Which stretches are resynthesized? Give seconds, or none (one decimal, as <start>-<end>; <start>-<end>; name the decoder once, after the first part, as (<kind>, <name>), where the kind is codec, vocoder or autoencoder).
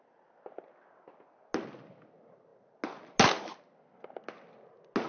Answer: none